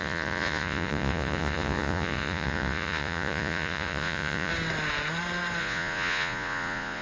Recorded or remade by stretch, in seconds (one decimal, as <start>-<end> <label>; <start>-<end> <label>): 0.0-4.5 remade; 4.5-5.6 recorded; 5.6-7.0 remade

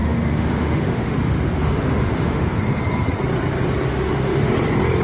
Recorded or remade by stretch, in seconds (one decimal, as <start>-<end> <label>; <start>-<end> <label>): 0.0-2.6 remade; 2.6-3.9 recorded; 3.9-4.5 remade; 4.5-5.0 recorded

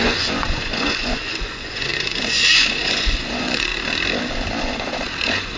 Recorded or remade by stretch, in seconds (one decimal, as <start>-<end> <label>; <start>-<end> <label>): 0.0-3.7 remade; 3.7-4.6 recorded; 4.6-5.6 remade

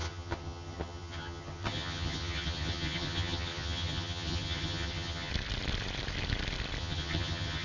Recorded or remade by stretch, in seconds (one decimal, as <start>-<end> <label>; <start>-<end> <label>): 0.0-5.3 remade; 5.3-6.8 recorded; 6.8-7.6 remade

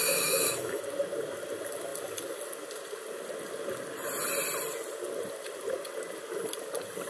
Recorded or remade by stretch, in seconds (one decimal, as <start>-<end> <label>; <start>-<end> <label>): 0.0-0.8 remade; 0.8-7.1 recorded

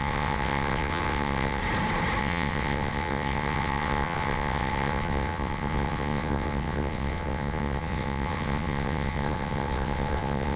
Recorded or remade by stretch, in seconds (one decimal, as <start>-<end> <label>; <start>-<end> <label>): 0.0-1.6 remade; 1.6-2.2 recorded; 2.2-10.6 remade